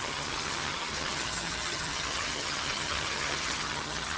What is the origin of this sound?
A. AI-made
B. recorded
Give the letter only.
A